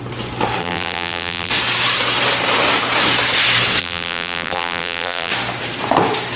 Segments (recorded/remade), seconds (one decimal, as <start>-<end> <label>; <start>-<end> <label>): 0.0-0.6 recorded; 0.6-1.5 remade; 1.5-3.8 recorded; 3.8-5.3 remade; 5.3-6.4 recorded